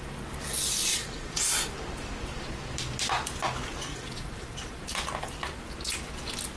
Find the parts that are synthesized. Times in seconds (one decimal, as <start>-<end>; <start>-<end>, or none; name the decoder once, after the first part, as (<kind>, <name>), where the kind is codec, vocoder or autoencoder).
0.9-1.4 (vocoder, Vocos); 3.9-4.8